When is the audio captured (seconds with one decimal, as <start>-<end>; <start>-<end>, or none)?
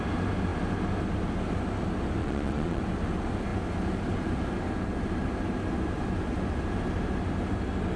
0.0-2.2; 2.8-8.0